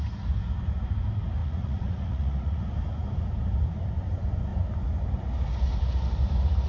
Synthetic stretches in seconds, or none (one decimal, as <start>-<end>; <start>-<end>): 1.4-2.6